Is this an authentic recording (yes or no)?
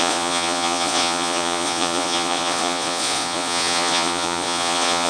no